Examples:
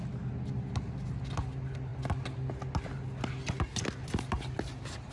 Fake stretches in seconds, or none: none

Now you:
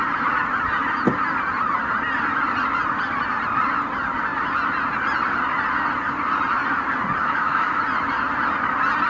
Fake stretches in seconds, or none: 7.2-7.8 (autoencoder, DAC-VAE)

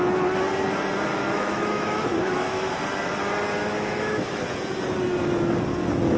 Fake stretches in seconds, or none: 1.1-2.8 (autoencoder, DAC-VAE); 3.6-4.4